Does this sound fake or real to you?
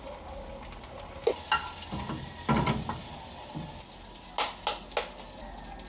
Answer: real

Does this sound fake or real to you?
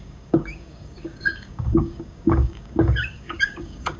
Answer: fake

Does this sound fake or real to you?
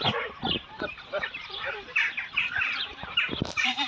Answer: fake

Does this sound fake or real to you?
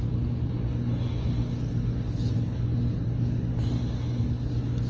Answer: real